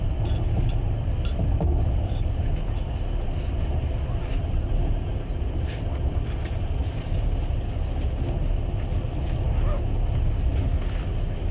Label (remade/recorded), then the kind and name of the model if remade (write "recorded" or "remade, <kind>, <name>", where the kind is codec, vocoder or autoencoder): recorded